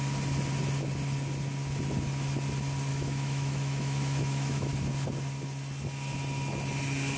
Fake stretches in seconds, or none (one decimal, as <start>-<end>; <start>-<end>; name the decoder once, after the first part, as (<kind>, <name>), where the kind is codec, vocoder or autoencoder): 2.9-4.7 (autoencoder, DAC-VAE)